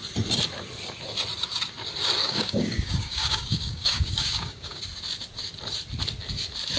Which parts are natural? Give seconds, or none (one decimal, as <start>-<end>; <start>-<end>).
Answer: 0.0-2.2; 4.8-6.8